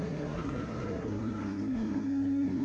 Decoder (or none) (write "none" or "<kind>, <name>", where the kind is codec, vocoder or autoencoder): codec, SNAC